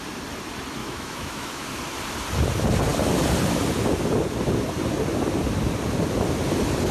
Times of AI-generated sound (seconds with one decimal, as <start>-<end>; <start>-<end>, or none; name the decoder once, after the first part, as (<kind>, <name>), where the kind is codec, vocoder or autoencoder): 0.8-1.7 (autoencoder, DAC-VAE)